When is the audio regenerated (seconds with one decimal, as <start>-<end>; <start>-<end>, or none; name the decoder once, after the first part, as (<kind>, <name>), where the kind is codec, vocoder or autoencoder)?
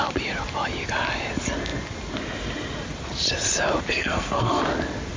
3.9-4.6 (codec, SNAC)